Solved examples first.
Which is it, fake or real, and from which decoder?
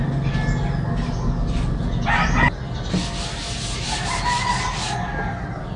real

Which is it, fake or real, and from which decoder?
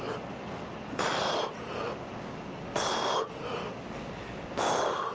real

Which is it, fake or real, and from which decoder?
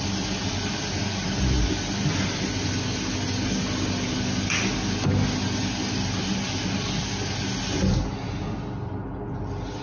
real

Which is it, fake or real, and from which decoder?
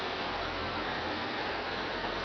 fake, codec, SNAC